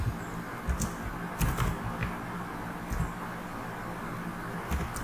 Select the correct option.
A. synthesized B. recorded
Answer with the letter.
B